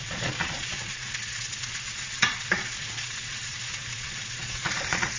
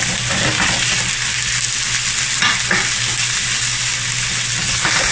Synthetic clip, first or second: first